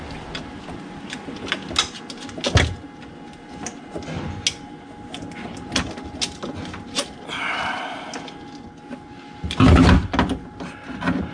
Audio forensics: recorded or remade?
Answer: recorded